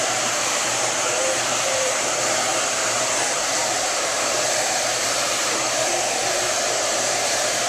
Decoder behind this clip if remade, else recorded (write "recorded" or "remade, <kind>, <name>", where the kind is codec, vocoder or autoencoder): remade, vocoder, BigVGAN v2